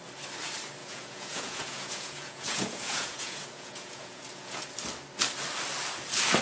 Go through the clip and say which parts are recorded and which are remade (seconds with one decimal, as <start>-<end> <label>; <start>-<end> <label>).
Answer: 0.0-0.8 recorded; 0.8-4.6 remade; 4.6-6.4 recorded